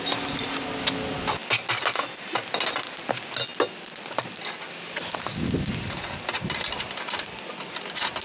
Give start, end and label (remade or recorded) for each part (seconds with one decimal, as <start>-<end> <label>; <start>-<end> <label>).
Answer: 0.0-8.2 recorded